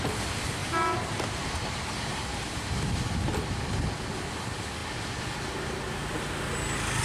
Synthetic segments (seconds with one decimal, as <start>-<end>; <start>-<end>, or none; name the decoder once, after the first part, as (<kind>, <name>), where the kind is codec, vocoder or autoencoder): 0.6-2.7 (vocoder, BigVGAN v2)